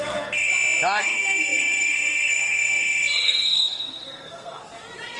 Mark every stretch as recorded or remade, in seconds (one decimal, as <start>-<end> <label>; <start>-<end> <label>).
0.0-0.5 remade; 0.5-1.0 recorded; 1.0-4.6 remade; 4.6-5.2 recorded